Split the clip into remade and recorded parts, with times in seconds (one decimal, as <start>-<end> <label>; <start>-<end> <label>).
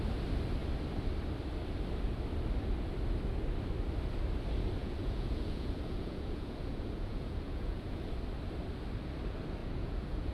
0.0-4.8 recorded; 4.8-8.0 remade; 8.0-9.6 recorded; 9.6-10.3 remade